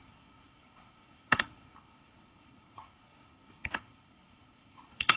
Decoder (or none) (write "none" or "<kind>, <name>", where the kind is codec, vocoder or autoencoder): codec, HILCodec